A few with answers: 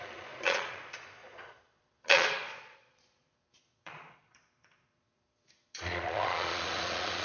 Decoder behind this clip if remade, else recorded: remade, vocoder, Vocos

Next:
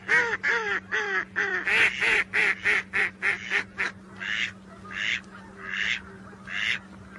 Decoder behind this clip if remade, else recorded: recorded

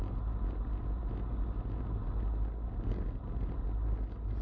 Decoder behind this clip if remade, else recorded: recorded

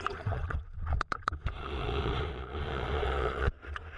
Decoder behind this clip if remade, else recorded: remade, vocoder, Vocos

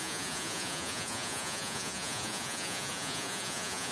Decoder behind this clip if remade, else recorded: remade, vocoder, Vocos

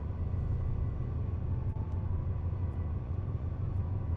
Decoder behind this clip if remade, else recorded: remade, vocoder, Vocos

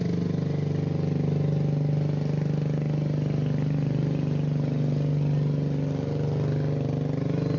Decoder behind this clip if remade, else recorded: recorded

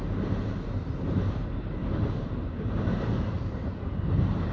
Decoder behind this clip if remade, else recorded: recorded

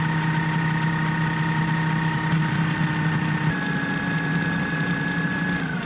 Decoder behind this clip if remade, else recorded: recorded